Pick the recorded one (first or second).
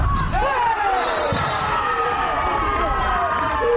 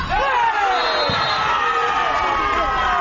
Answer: second